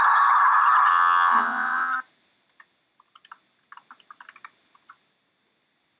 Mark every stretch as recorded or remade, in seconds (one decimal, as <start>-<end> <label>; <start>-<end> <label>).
0.0-0.9 recorded; 0.9-1.9 remade; 1.9-6.0 recorded